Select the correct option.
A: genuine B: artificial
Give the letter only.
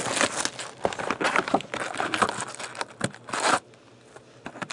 A